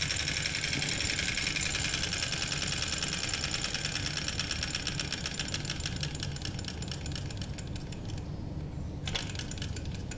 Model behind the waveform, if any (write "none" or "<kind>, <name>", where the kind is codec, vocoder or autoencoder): none